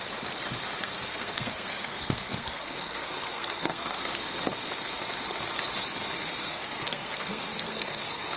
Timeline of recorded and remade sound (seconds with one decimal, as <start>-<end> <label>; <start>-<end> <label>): 0.0-0.8 recorded; 0.8-4.0 remade; 4.0-6.4 recorded; 6.4-8.4 remade